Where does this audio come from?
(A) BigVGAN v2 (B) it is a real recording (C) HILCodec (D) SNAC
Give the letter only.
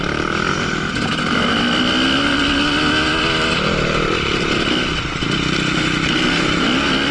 B